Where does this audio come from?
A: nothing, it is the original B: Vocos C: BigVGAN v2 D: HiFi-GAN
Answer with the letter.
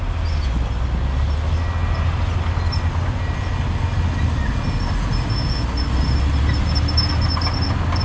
A